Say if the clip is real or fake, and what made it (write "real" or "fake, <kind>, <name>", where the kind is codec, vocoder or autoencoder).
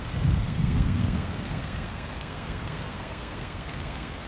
fake, codec, SNAC